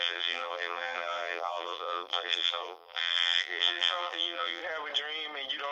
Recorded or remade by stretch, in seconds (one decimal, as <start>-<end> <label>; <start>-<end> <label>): 0.0-4.6 remade; 4.6-5.7 recorded